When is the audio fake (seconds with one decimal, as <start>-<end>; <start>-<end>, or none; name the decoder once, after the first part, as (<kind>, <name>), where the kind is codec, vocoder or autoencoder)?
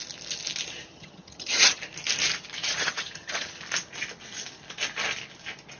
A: 0.9-1.8 (vocoder, HiFi-GAN); 2.6-3.6